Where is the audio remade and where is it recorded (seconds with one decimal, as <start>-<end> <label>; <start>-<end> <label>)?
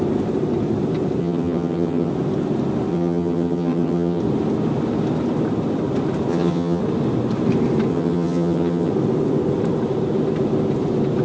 0.0-1.2 recorded; 1.2-2.1 remade; 2.1-2.9 recorded; 2.9-4.2 remade; 4.2-6.3 recorded; 6.3-6.8 remade; 6.8-7.9 recorded; 7.9-8.9 remade; 8.9-11.2 recorded